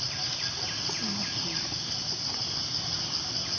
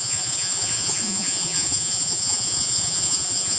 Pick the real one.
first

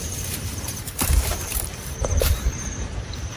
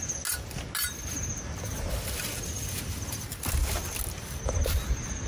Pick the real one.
second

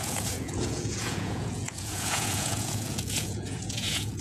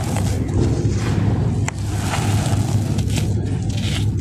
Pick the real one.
second